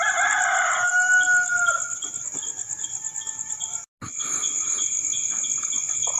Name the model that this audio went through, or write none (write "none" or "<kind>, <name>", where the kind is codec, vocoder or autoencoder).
none